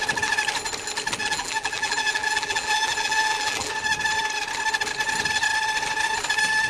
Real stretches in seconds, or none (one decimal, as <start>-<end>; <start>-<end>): 0.0-1.2; 3.7-6.7